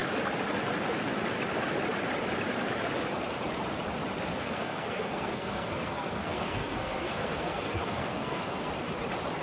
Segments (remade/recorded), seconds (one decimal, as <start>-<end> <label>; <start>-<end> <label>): 0.0-4.3 recorded; 4.3-8.7 remade; 8.7-9.4 recorded